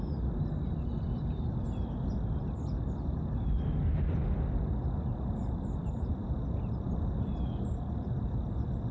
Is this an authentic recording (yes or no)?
yes